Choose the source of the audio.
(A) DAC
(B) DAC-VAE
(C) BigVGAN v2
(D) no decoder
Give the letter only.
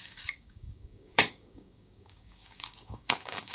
A